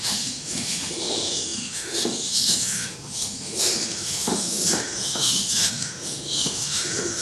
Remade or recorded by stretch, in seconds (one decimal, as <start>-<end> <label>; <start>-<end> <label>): 0.0-7.2 remade